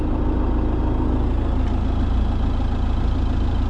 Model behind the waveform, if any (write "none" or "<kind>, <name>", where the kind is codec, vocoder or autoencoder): none